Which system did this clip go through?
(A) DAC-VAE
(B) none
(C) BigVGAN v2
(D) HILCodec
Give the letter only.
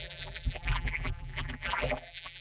C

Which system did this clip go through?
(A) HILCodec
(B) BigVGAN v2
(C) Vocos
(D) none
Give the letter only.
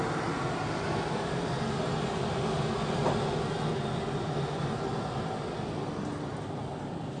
D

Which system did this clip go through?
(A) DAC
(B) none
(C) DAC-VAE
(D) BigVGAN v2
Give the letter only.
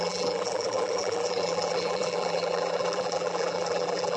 D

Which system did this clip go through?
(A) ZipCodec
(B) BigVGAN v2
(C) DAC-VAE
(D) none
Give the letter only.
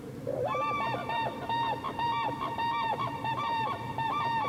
B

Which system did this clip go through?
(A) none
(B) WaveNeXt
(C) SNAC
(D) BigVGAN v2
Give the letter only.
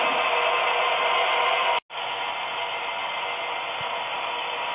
A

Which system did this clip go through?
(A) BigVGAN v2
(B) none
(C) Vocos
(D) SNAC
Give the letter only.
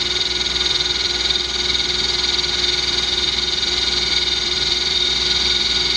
A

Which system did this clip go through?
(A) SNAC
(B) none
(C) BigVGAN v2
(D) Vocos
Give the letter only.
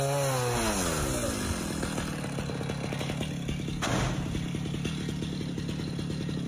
B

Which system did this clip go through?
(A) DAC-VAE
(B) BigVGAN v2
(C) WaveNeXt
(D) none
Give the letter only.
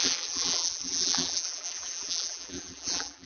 B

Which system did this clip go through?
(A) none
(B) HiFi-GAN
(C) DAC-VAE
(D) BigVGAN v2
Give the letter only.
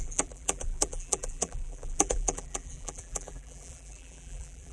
D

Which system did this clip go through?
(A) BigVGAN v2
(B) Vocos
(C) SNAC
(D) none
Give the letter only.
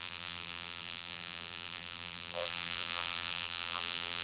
A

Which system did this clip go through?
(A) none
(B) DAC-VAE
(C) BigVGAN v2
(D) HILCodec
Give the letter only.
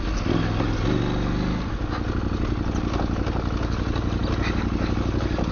A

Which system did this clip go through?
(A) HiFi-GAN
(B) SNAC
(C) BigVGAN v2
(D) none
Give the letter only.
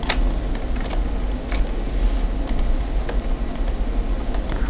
D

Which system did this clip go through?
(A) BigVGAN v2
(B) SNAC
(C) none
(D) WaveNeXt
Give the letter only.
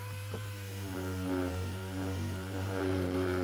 A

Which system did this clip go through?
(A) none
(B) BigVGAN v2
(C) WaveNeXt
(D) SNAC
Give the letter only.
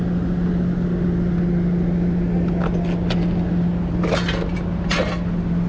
A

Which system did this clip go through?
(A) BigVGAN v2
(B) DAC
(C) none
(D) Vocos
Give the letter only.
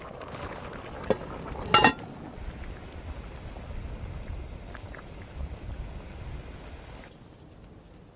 C